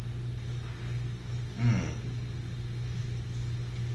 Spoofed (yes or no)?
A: no